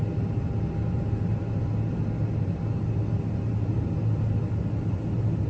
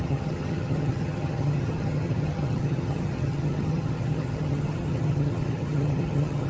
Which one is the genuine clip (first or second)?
first